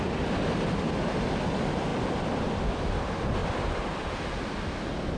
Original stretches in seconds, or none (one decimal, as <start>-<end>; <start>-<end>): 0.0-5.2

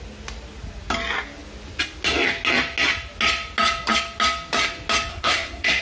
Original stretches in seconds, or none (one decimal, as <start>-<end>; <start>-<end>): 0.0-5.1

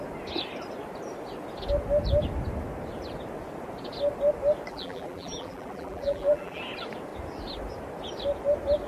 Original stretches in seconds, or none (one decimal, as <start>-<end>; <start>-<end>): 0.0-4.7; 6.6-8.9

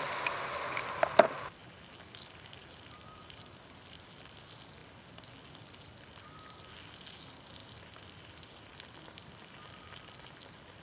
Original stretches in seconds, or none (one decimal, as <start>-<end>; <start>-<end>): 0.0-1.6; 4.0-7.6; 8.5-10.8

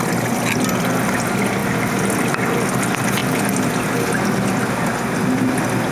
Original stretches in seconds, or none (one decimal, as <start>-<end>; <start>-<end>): 0.0-5.9

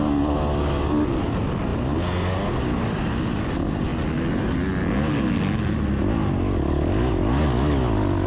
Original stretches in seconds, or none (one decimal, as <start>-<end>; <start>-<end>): 0.0-8.3

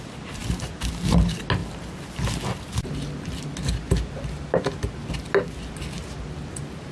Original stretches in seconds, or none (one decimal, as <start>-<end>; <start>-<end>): 0.0-6.9

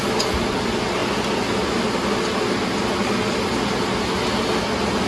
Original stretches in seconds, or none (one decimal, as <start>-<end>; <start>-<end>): 0.0-5.1